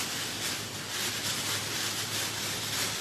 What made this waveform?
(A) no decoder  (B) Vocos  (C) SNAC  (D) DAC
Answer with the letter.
A